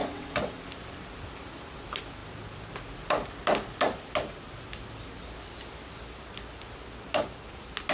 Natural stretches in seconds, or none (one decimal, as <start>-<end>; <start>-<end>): 0.6-7.9